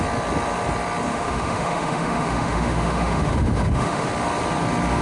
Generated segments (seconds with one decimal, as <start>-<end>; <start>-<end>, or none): 1.1-4.1